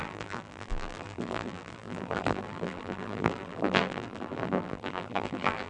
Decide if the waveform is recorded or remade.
remade